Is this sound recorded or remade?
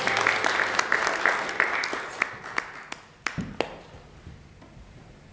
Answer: recorded